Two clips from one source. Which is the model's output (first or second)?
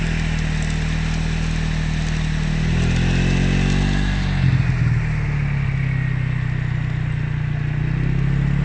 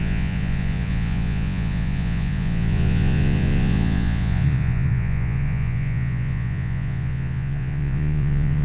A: second